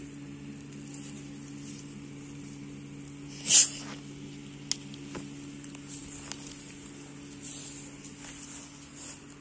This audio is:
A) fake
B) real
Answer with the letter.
B